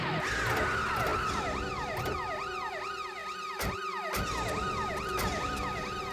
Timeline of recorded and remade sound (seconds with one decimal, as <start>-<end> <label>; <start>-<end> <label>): 0.0-6.1 recorded